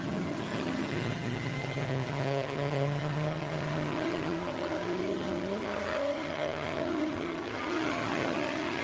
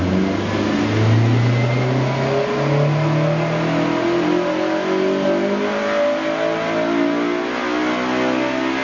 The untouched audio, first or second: second